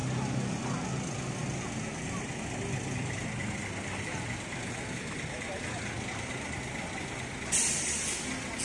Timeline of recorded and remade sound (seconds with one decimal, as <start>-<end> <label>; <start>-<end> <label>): 0.0-8.6 recorded